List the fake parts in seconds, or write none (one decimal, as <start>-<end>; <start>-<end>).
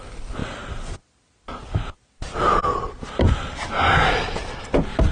none